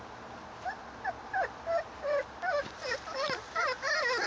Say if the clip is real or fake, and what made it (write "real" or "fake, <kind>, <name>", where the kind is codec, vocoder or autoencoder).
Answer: real